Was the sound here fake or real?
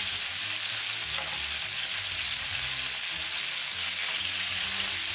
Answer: real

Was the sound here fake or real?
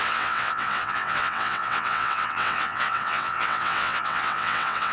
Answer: fake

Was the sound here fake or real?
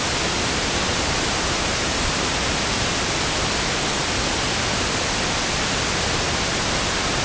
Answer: real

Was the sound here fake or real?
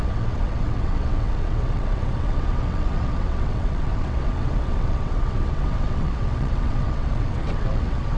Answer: fake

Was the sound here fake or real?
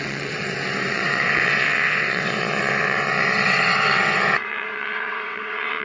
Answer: fake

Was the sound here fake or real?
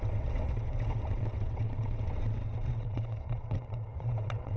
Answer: fake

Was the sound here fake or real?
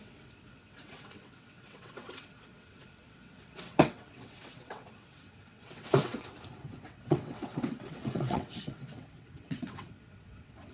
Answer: fake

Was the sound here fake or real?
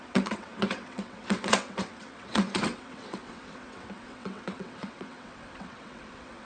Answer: fake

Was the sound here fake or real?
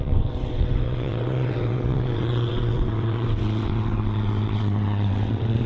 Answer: fake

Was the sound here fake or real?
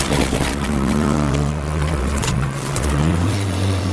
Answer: fake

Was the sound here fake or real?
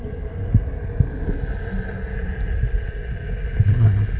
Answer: real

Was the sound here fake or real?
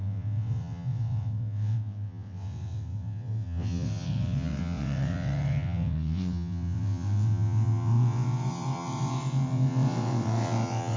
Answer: fake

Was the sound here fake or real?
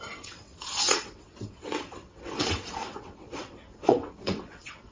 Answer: fake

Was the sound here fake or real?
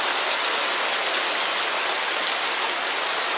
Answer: real